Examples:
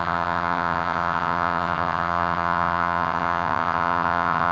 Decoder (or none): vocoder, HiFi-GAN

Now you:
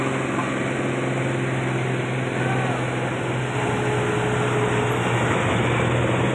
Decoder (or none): none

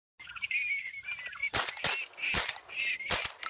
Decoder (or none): none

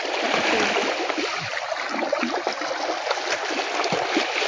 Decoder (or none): none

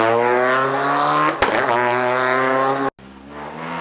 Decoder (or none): none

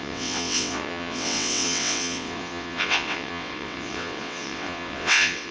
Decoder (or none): vocoder, WaveNeXt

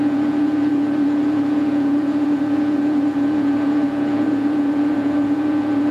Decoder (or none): vocoder, Vocos